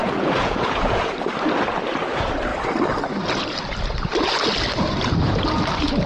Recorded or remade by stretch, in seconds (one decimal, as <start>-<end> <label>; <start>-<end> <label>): 0.0-1.1 remade; 1.1-6.1 recorded